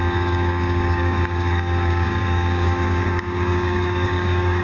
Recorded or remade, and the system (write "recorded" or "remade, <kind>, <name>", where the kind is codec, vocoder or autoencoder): remade, codec, DAC